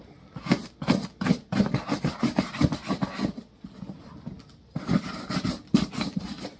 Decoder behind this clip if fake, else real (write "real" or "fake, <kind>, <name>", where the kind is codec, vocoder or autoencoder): real